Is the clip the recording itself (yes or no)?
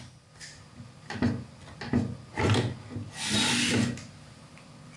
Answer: yes